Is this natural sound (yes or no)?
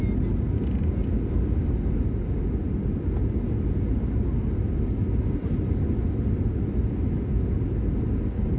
yes